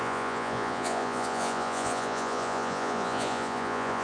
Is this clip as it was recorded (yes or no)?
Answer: no